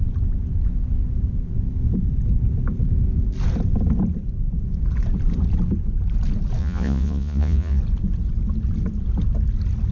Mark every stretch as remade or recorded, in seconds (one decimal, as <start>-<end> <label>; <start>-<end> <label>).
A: 0.0-6.6 recorded; 6.6-7.8 remade; 7.8-9.9 recorded